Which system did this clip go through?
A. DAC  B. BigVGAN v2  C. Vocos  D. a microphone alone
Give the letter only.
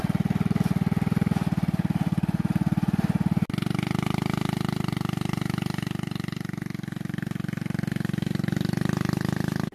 D